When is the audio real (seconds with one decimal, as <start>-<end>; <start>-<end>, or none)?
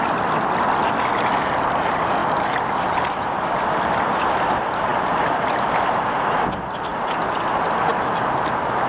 0.0-2.2; 4.2-6.9; 8.5-8.9